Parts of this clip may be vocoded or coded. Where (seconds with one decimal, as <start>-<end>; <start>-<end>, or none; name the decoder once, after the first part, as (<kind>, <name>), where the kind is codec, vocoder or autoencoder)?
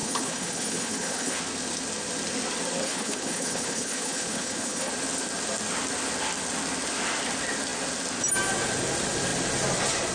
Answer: 0.0-1.4 (codec, HILCodec); 2.8-4.9